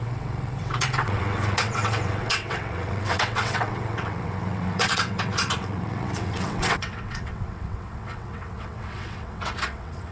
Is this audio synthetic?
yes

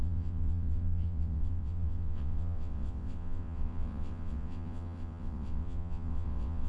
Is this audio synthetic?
yes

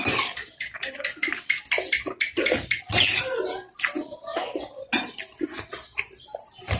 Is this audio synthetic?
no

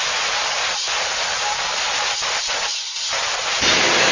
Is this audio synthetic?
no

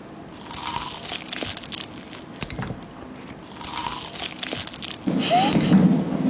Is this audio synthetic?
no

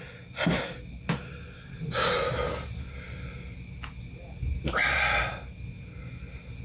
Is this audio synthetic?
no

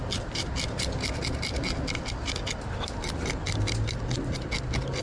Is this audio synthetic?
no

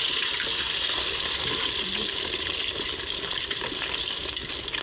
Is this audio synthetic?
no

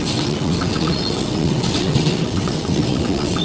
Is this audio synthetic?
yes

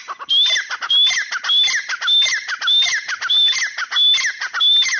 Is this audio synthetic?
no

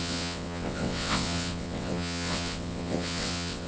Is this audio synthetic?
yes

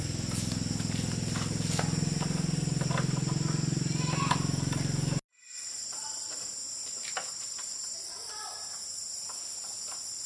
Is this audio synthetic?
no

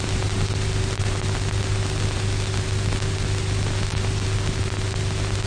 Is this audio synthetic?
no